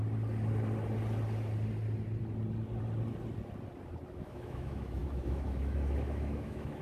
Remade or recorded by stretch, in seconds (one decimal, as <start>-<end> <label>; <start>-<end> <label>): 0.0-4.1 recorded; 4.1-6.8 remade